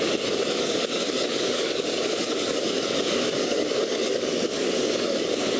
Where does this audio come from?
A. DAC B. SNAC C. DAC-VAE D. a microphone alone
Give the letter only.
A